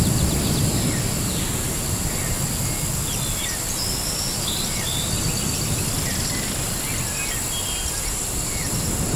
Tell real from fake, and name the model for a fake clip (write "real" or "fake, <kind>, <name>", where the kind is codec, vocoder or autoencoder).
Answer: real